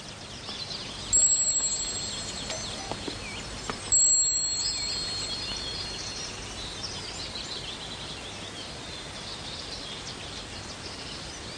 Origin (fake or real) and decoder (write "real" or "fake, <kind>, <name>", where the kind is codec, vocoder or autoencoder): real